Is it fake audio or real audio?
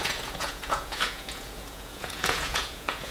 fake